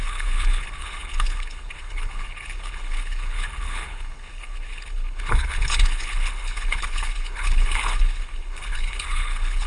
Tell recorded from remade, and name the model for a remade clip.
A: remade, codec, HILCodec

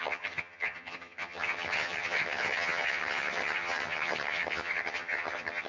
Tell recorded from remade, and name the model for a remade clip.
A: remade, vocoder, HiFi-GAN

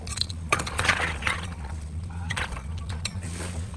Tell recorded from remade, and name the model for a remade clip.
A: remade, vocoder, Vocos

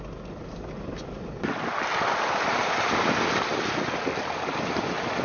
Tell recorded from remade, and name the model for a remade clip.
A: recorded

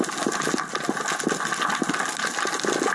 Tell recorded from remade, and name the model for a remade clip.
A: recorded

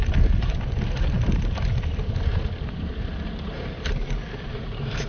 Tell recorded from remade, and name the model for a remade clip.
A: remade, vocoder, BigVGAN v2